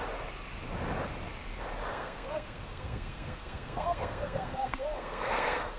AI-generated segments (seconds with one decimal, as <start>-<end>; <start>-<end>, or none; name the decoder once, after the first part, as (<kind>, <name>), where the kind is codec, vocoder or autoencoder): 1.9-5.8 (codec, SNAC)